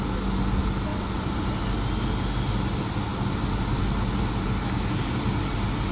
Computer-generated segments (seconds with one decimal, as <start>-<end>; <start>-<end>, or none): none